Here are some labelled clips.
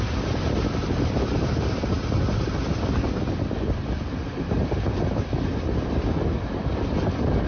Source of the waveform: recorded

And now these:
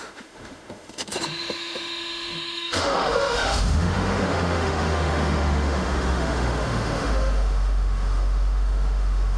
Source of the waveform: remade